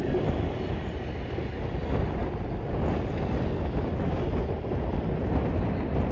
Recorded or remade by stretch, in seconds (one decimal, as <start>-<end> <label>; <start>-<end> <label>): 0.0-6.1 recorded